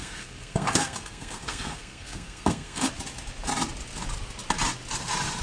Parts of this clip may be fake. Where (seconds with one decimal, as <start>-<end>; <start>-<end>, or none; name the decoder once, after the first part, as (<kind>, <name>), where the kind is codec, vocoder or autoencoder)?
0.0-2.9 (codec, SNAC)